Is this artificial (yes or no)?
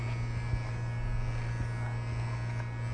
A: no